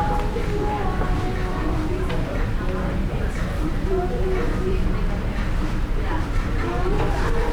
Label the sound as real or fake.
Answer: fake